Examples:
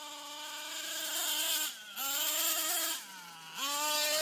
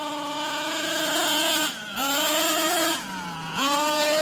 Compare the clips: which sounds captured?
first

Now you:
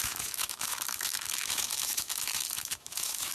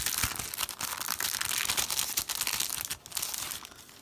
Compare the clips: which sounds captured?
second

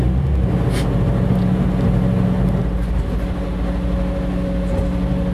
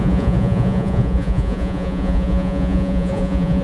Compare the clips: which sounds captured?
first